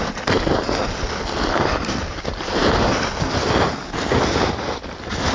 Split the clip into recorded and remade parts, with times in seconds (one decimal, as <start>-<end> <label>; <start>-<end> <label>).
0.0-5.3 recorded